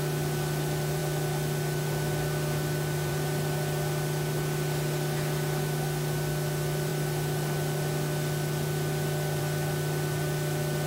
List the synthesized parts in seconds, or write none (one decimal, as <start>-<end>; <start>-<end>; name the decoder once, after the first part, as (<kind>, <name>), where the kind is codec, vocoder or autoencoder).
none